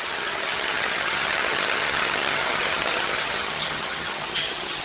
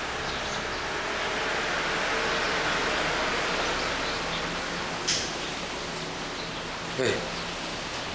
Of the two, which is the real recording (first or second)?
second